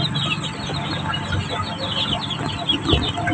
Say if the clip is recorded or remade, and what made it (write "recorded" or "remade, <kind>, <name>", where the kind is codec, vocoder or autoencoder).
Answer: recorded